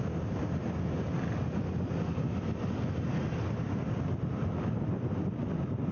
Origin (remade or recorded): recorded